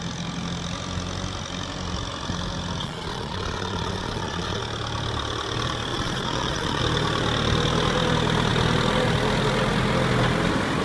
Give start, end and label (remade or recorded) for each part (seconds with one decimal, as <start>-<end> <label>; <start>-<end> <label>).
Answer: 0.0-2.8 recorded; 2.8-4.6 remade; 4.6-5.9 recorded; 5.9-6.8 remade; 6.8-10.8 recorded